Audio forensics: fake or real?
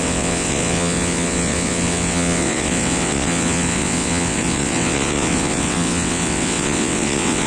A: fake